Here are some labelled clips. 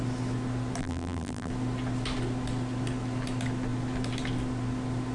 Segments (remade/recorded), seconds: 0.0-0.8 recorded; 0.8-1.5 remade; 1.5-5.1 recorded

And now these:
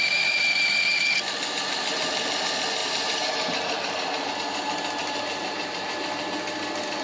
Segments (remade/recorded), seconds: 0.0-2.8 recorded; 2.8-4.3 remade; 4.3-5.0 recorded; 5.0-6.2 remade; 6.2-7.0 recorded

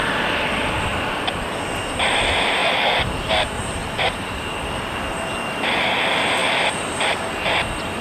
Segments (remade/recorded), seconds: 0.0-0.9 recorded; 0.9-1.5 remade; 1.5-2.6 recorded; 2.6-3.3 remade; 3.3-3.8 recorded; 3.8-5.1 remade; 5.1-6.4 recorded; 6.4-7.2 remade; 7.2-8.0 recorded

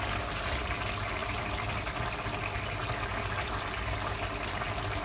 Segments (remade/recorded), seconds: 0.0-1.2 recorded; 1.2-1.7 remade; 1.7-3.1 recorded; 3.1-3.7 remade; 3.7-5.0 recorded

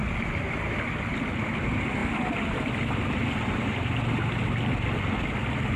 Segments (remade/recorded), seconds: 0.0-2.0 recorded; 2.0-3.4 remade; 3.4-5.8 recorded

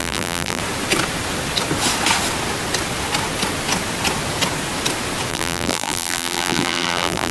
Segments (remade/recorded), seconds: 0.0-0.6 remade; 0.6-5.3 recorded; 5.3-7.3 remade

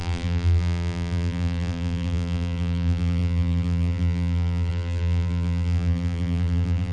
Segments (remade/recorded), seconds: 0.0-6.9 remade

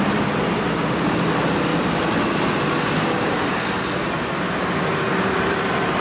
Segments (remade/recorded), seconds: 0.0-1.7 remade; 1.7-5.3 recorded; 5.3-6.0 remade